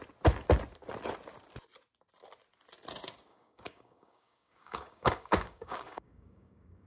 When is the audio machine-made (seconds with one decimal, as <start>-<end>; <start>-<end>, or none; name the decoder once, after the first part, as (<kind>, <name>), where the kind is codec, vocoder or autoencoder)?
3.3-6.9 (codec, DAC)